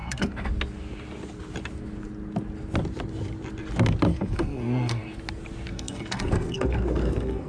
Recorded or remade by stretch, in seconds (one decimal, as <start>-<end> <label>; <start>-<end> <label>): 0.0-0.5 remade; 0.5-4.1 recorded; 4.1-5.2 remade; 5.2-5.7 recorded; 5.7-7.5 remade